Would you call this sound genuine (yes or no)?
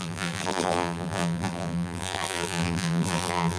no